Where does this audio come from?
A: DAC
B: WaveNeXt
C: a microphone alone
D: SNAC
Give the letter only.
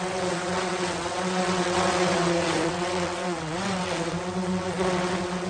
B